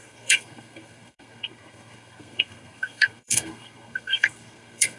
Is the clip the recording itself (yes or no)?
no